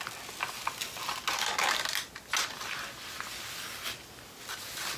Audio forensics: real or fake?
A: real